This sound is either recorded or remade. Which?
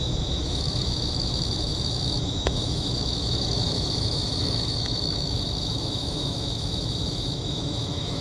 remade